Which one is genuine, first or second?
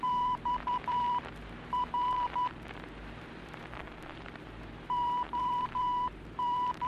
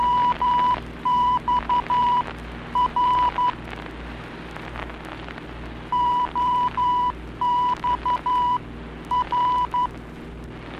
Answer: second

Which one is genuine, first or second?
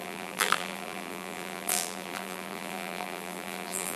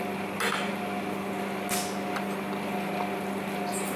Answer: second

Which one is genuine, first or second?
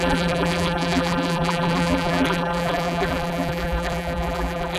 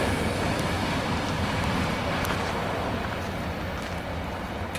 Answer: second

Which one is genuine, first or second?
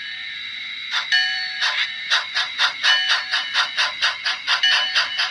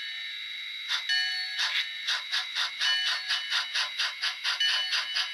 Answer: second